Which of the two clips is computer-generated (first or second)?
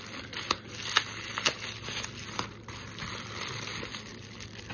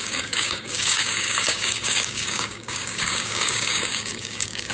second